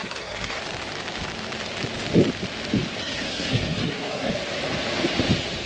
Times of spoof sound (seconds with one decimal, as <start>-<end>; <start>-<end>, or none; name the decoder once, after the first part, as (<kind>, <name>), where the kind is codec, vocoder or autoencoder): 0.0-0.6 (codec, SNAC); 3.0-4.3